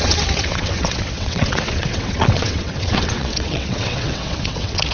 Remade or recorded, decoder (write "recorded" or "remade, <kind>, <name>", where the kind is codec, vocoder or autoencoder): remade, vocoder, WaveNeXt